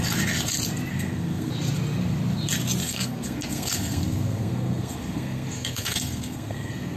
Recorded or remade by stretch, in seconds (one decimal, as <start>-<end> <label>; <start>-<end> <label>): 0.0-0.9 recorded; 0.9-1.5 remade; 1.5-2.8 recorded; 2.8-7.0 remade